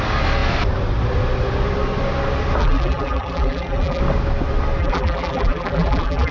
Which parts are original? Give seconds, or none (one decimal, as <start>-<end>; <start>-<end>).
0.0-2.6; 4.0-4.8